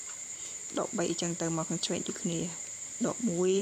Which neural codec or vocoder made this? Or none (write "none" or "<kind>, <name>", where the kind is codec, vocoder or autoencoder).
vocoder, BigVGAN v2